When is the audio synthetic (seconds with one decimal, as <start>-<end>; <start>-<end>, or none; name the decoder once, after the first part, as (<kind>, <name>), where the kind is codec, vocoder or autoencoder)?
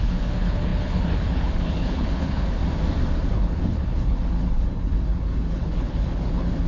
0.0-2.6 (codec, HILCodec); 3.3-6.7